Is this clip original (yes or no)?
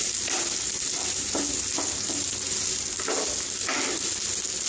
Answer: yes